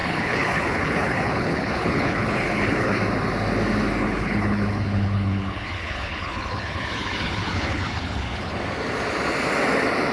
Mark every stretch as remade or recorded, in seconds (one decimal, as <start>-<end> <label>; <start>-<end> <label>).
0.0-3.0 remade; 3.0-4.0 recorded; 4.0-8.6 remade; 8.6-10.1 recorded